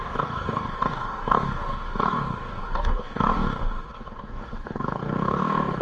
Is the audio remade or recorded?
remade